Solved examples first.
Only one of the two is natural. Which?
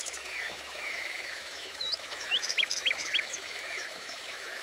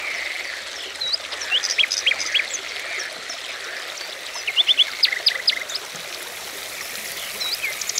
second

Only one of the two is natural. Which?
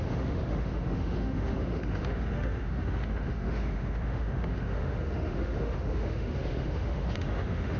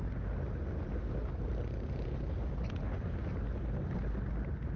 second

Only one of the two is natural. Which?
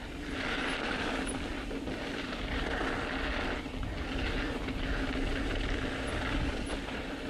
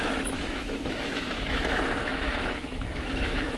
first